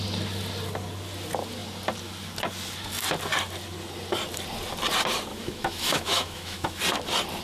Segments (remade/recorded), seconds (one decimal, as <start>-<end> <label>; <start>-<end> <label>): 0.0-5.3 recorded; 5.3-6.8 remade; 6.8-7.4 recorded